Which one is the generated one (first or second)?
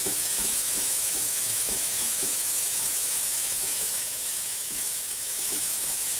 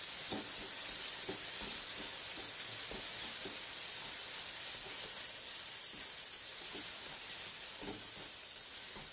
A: first